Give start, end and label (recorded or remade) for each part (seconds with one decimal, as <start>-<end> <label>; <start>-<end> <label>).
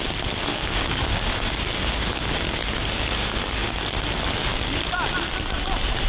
0.0-0.5 recorded; 0.5-2.7 remade; 2.7-6.1 recorded